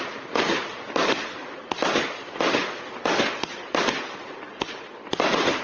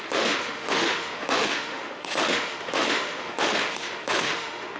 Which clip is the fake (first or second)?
second